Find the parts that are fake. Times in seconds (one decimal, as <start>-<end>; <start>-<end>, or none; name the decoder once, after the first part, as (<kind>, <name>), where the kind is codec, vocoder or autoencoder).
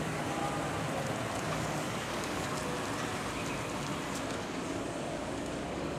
0.0-0.4 (codec, DAC); 1.4-2.5; 4.3-6.0